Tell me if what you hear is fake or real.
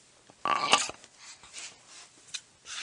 real